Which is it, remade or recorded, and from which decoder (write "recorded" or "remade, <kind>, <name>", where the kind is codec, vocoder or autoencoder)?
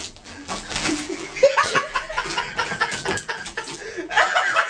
remade, vocoder, BigVGAN v2